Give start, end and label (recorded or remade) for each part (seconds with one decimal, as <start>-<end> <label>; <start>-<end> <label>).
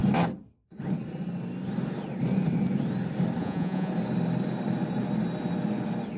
0.0-3.4 recorded; 3.4-3.9 remade; 3.9-6.2 recorded